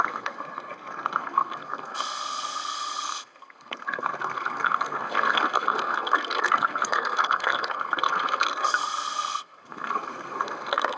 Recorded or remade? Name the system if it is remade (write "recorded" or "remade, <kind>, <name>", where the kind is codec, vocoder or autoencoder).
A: remade, codec, SNAC